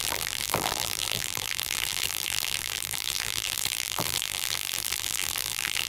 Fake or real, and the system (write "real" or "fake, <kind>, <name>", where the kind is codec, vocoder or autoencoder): fake, vocoder, BigVGAN v2